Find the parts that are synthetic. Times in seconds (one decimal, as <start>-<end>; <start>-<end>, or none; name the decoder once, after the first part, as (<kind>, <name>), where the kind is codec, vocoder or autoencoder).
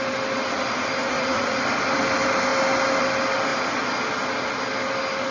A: 1.0-1.6 (vocoder, Vocos)